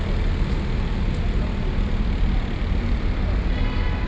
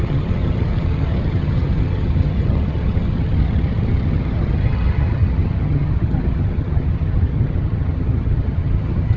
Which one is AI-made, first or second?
second